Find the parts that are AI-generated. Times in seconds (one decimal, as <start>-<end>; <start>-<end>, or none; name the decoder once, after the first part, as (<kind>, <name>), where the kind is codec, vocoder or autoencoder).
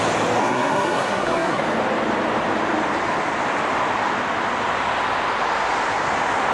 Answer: 0.4-1.6 (codec, SNAC)